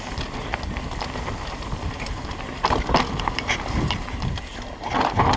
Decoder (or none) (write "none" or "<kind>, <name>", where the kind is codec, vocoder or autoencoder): none